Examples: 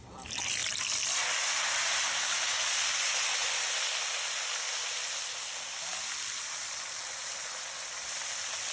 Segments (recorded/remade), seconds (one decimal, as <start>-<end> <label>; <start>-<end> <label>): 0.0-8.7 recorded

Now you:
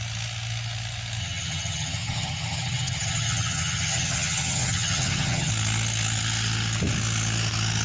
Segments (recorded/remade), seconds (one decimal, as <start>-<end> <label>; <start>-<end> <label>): 0.0-1.2 recorded; 1.2-5.5 remade; 5.5-7.8 recorded

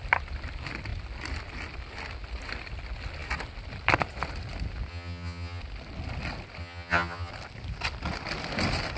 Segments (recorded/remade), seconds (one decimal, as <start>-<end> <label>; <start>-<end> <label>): 0.0-4.9 recorded; 4.9-5.6 remade; 5.6-6.6 recorded; 6.6-7.3 remade; 7.3-9.0 recorded

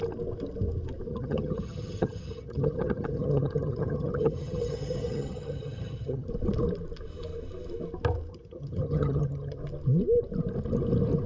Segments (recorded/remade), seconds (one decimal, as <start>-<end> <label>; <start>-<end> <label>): 0.0-1.1 recorded; 1.1-6.3 remade; 6.3-8.3 recorded; 8.3-9.6 remade; 9.6-11.3 recorded

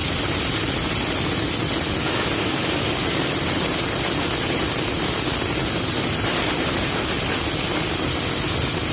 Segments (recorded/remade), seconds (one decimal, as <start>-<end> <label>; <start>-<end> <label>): 0.0-8.9 recorded

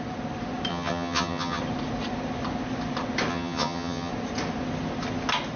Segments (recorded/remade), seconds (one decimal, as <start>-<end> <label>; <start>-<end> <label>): 0.0-0.7 recorded; 0.7-1.6 remade; 1.6-3.3 recorded; 3.3-4.1 remade; 4.1-5.6 recorded

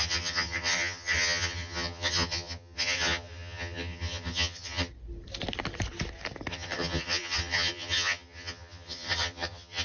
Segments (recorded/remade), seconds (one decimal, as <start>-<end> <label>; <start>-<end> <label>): 0.0-4.9 remade; 4.9-6.5 recorded; 6.5-9.8 remade